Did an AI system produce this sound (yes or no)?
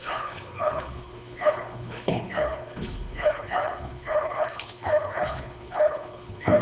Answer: yes